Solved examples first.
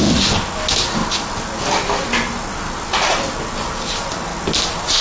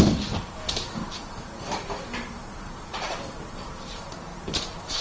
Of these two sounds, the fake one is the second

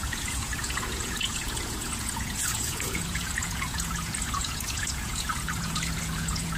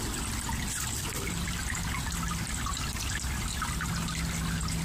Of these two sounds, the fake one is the first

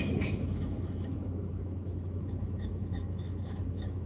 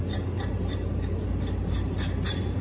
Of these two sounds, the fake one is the first